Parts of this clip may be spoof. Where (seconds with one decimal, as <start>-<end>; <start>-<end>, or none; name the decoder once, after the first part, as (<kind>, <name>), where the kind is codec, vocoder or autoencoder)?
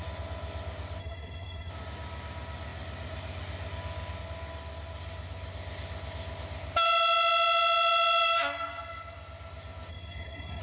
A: 1.0-1.7 (codec, SNAC); 9.9-10.6